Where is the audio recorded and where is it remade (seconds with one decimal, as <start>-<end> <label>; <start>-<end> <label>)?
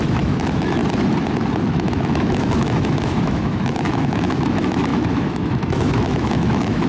0.0-0.8 remade; 0.8-1.7 recorded; 1.7-6.9 remade